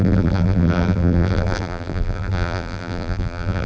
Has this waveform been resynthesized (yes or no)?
yes